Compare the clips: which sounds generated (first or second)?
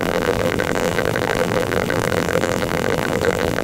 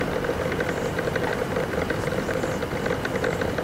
first